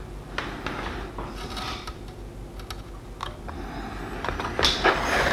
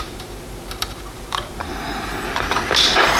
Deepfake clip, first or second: second